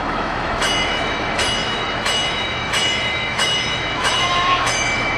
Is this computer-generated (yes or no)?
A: yes